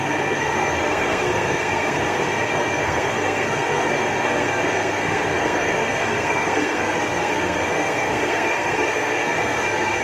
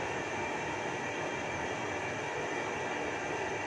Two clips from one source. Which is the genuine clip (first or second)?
second